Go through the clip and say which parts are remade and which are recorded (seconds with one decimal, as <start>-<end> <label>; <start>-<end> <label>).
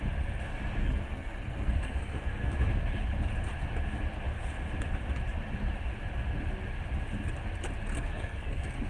0.0-0.8 recorded; 0.8-2.5 remade; 2.5-7.9 recorded; 7.9-8.9 remade